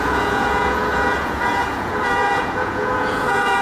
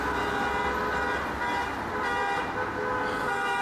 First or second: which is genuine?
second